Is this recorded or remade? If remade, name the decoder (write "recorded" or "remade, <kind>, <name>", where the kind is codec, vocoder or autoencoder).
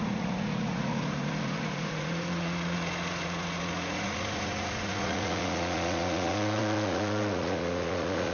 remade, vocoder, Vocos